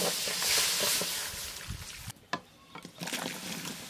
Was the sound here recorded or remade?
recorded